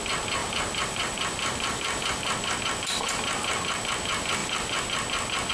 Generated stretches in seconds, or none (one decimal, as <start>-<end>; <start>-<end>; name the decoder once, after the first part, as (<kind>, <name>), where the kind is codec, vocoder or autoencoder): 0.4-2.6 (vocoder, BigVGAN v2)